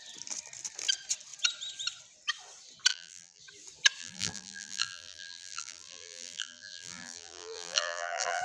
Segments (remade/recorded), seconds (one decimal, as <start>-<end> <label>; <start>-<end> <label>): 0.0-2.9 recorded; 2.9-3.4 remade; 3.4-4.0 recorded; 4.0-8.4 remade